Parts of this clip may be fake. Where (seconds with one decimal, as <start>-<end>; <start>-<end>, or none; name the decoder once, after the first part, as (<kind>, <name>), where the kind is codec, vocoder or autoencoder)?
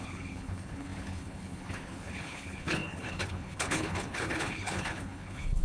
0.0-5.6 (codec, HILCodec)